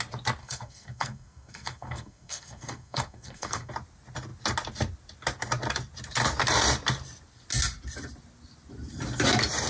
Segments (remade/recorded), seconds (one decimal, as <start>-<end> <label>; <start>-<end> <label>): 0.0-0.4 recorded; 0.4-3.7 remade; 3.7-9.7 recorded